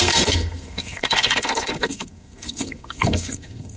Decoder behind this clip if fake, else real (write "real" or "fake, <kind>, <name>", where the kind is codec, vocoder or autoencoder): fake, codec, SNAC